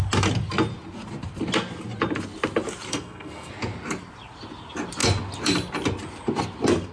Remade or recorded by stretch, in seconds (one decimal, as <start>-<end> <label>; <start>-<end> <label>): 0.0-2.9 recorded; 2.9-3.5 remade; 3.5-6.9 recorded